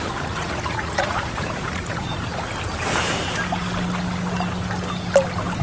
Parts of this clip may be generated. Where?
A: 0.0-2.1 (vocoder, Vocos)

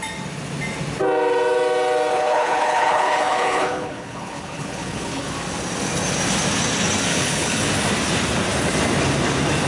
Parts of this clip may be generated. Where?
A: 2.1-5.3 (codec, HILCodec); 7.1-7.7

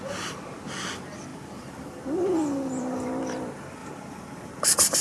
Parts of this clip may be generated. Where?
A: none